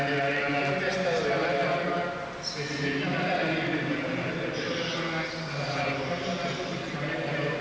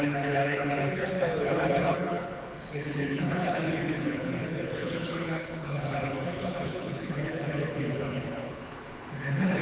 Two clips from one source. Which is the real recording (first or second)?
first